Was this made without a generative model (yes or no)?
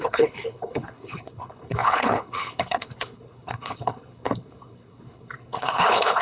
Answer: no